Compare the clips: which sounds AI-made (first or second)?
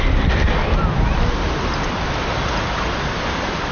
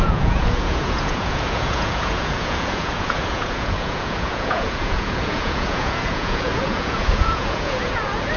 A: second